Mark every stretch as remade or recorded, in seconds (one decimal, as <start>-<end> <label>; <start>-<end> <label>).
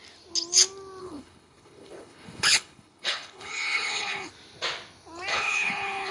0.0-1.0 recorded; 1.0-4.3 remade; 4.3-5.3 recorded; 5.3-6.1 remade